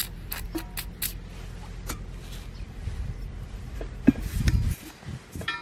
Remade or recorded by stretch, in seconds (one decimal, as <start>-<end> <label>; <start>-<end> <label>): 0.0-5.6 recorded